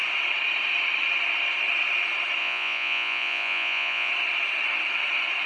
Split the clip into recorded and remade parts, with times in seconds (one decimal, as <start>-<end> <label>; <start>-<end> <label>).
0.0-2.4 recorded; 2.4-4.1 remade; 4.1-5.5 recorded